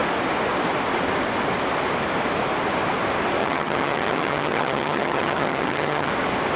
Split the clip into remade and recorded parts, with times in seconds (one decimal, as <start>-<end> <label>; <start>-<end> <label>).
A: 0.0-3.4 recorded; 3.4-6.1 remade; 6.1-6.6 recorded